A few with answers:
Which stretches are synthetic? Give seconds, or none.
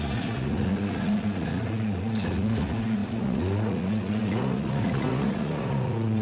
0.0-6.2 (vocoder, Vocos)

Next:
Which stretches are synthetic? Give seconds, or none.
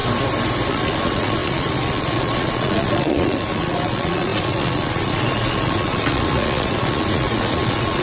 0.7-8.0 (vocoder, Vocos)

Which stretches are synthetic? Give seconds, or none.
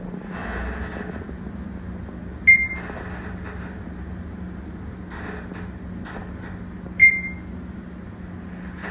none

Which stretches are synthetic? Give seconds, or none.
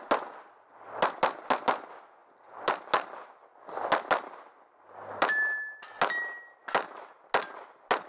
none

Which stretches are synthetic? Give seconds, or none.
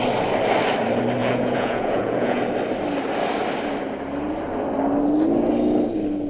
1.2-2.4 (vocoder, Vocos)